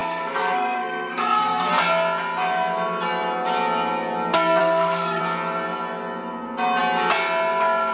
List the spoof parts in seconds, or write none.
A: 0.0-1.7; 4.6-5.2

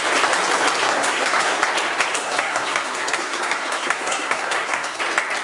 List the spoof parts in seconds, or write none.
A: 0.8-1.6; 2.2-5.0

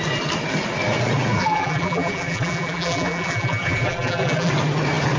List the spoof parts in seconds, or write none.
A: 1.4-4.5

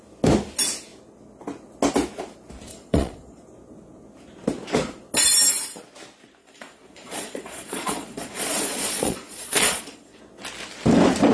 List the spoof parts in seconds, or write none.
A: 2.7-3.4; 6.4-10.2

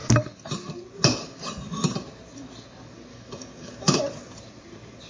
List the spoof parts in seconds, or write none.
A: 3.1-4.0

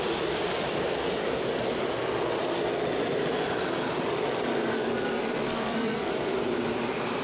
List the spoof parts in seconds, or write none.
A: 4.8-6.1